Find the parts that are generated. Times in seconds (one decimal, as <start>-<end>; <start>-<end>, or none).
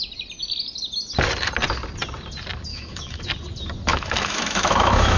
2.7-3.2; 3.9-5.2